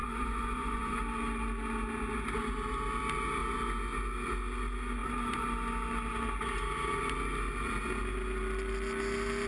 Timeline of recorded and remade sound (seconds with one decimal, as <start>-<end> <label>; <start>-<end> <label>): 0.0-1.0 remade; 1.0-9.5 recorded